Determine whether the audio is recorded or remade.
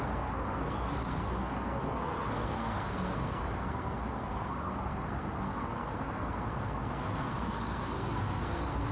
remade